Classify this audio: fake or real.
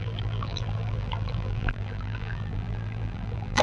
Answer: fake